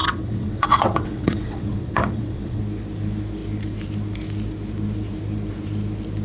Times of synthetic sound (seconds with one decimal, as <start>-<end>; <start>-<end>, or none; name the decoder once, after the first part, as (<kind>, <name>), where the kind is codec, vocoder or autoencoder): 0.0-2.6 (vocoder, WaveNeXt)